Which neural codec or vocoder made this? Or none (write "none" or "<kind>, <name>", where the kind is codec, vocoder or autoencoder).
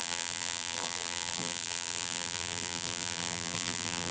vocoder, BigVGAN v2